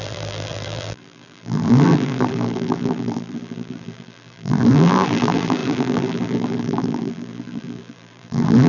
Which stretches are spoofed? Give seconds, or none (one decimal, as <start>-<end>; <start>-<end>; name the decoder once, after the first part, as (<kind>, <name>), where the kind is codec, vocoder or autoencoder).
0.0-8.7 (vocoder, BigVGAN v2)